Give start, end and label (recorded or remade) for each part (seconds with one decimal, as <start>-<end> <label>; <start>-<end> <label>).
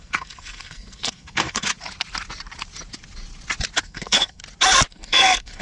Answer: 0.0-1.7 remade; 1.7-3.8 recorded; 3.8-4.4 remade; 4.4-4.9 recorded; 4.9-5.6 remade